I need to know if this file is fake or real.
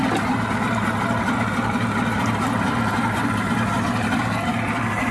real